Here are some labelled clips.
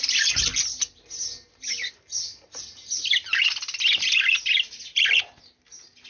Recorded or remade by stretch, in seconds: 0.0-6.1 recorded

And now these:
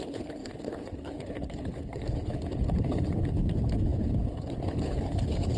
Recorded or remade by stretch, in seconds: 0.0-5.6 remade

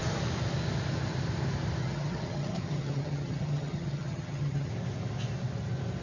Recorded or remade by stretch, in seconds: 0.0-1.8 recorded; 1.8-4.7 remade; 4.7-6.0 recorded

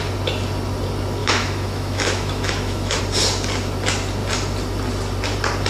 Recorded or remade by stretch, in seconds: 0.0-1.2 recorded; 1.2-3.0 remade; 3.0-5.7 recorded

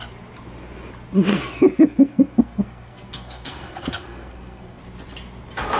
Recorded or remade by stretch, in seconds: 0.0-1.3 recorded; 1.3-4.8 remade; 4.8-5.8 recorded